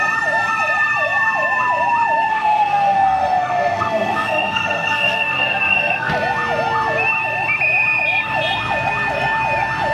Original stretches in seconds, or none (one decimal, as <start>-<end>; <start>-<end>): 0.0-2.3; 6.1-9.9